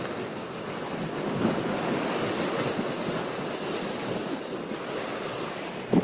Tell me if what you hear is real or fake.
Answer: real